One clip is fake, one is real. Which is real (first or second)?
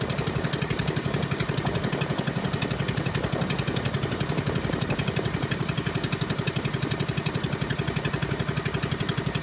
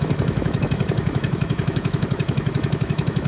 first